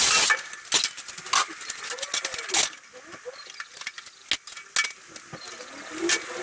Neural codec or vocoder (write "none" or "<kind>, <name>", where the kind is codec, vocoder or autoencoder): none